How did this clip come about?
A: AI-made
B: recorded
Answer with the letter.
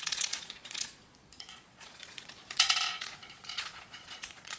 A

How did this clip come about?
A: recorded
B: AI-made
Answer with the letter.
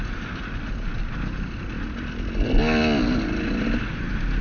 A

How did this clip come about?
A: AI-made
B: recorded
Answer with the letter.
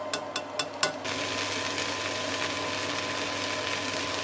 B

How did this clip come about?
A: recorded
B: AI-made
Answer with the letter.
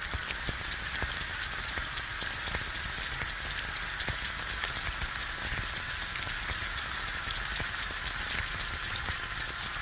A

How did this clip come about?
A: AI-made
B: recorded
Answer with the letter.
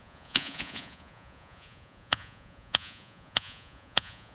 A